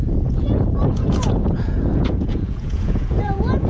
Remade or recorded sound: remade